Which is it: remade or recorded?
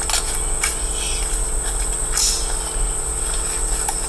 recorded